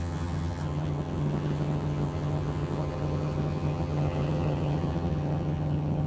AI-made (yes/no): yes